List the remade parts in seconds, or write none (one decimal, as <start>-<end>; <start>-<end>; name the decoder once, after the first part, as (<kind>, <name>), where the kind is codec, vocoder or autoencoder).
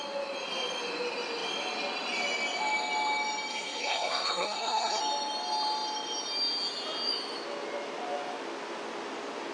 3.5-5.0 (codec, SNAC)